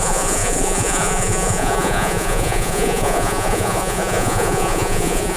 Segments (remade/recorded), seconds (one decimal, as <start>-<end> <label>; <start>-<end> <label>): 0.0-5.4 remade